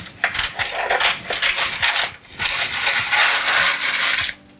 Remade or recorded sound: recorded